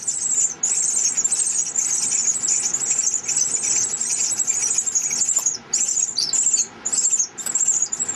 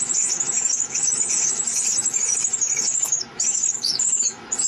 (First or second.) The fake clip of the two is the second